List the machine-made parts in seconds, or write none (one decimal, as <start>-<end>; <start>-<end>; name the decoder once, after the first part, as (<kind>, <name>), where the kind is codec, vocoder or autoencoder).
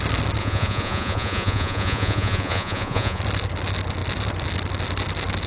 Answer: 0.4-3.2 (vocoder, Vocos)